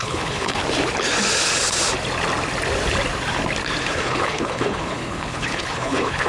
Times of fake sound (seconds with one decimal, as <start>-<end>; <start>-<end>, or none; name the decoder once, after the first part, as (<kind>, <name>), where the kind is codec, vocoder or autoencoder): 0.0-0.6 (codec, HILCodec); 3.8-6.3